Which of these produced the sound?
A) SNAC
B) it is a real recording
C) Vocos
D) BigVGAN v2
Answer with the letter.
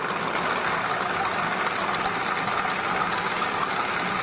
B